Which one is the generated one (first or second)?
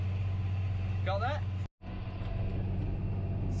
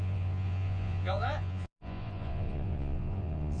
second